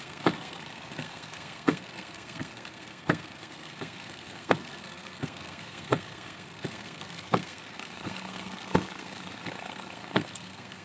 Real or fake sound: fake